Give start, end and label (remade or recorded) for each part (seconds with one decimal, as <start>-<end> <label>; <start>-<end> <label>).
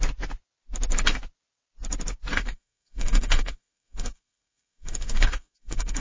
0.0-2.3 recorded; 2.3-6.0 remade